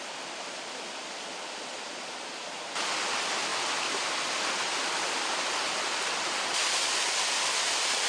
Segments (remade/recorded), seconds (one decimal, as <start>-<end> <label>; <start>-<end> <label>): 0.0-8.1 recorded